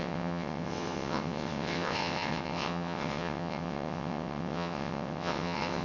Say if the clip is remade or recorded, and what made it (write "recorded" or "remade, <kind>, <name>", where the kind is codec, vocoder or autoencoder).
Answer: remade, vocoder, WaveNeXt